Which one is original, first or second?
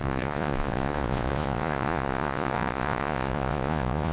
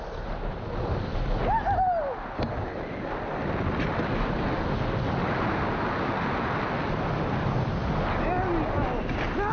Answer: second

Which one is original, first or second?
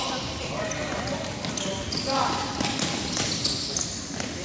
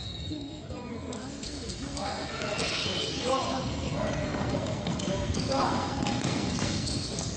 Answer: first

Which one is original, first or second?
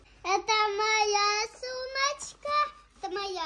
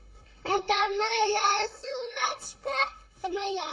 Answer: first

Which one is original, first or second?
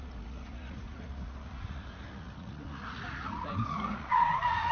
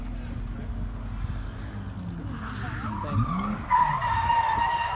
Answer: second